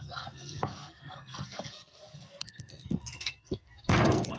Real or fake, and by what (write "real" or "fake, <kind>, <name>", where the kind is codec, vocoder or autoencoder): fake, codec, SNAC